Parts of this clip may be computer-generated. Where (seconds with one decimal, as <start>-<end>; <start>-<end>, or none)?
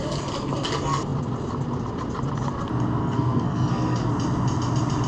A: 3.0-4.1